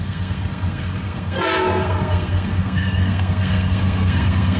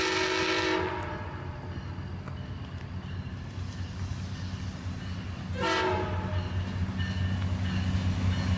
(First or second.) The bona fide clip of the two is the second